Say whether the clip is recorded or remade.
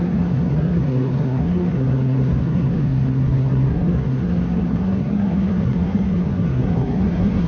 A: remade